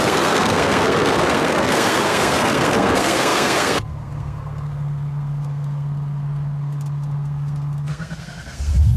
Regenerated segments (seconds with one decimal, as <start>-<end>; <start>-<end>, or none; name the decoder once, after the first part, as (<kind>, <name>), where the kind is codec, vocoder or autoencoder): 0.0-9.0 (codec, SNAC)